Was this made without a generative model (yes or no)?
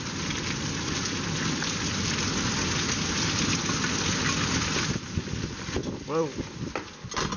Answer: yes